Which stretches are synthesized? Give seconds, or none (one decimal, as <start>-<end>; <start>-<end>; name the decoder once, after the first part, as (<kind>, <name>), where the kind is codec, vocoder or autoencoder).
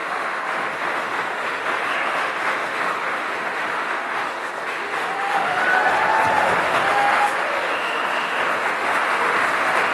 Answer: 0.0-5.6 (autoencoder, DAC-VAE); 6.3-9.9